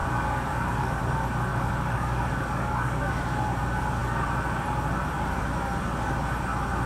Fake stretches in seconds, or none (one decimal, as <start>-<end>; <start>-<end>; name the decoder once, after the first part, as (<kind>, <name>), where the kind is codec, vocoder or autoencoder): 0.0-1.0 (codec, DAC); 1.5-3.1